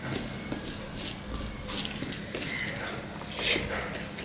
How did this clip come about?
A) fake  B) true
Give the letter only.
B